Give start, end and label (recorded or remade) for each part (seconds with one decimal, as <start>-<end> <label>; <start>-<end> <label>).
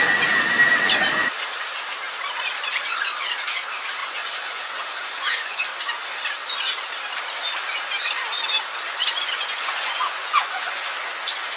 0.0-4.0 recorded; 4.0-5.6 remade; 5.6-9.0 recorded; 9.0-10.8 remade; 10.8-11.6 recorded